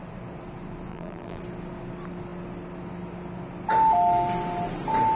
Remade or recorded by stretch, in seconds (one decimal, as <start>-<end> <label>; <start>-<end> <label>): 0.0-0.9 recorded; 0.9-1.4 remade; 1.4-5.2 recorded